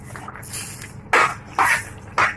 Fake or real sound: real